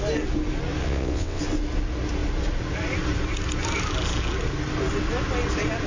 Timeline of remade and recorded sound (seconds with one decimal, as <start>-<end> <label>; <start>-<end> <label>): 0.0-0.8 recorded; 0.8-1.4 remade; 1.4-5.9 recorded